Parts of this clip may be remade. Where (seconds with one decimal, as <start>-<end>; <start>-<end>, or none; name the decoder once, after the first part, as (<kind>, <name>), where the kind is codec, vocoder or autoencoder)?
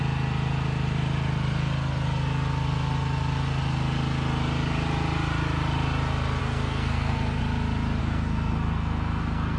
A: 6.4-7.4 (codec, SNAC); 8.0-9.6